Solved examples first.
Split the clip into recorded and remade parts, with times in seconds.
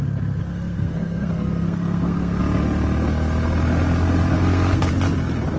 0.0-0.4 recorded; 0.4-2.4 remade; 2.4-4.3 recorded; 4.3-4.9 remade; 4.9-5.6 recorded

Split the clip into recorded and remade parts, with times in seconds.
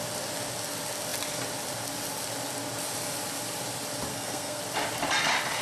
0.0-4.1 recorded; 4.1-4.6 remade; 4.6-5.6 recorded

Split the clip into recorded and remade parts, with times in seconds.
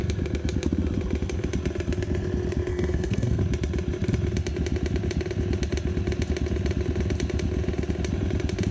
0.0-2.7 recorded; 2.7-3.4 remade; 3.4-8.7 recorded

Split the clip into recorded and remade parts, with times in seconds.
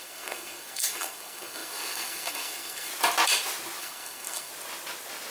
0.0-2.9 remade; 2.9-3.8 recorded; 3.8-4.5 remade; 4.5-5.3 recorded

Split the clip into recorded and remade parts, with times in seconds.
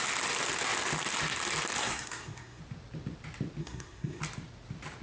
0.0-1.8 recorded; 1.8-2.6 remade; 2.6-3.6 recorded; 3.6-4.2 remade; 4.2-5.0 recorded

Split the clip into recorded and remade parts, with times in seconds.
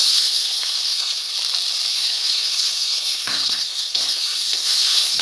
0.0-1.3 remade; 1.3-1.9 recorded; 1.9-5.2 remade